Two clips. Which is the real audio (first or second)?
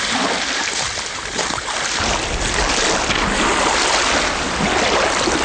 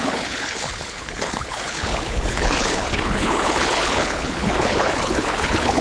first